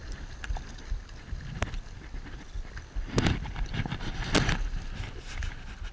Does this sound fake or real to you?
real